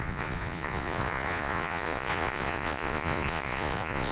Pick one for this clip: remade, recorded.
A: remade